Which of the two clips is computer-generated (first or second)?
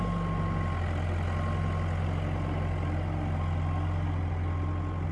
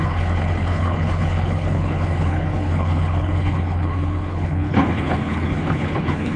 second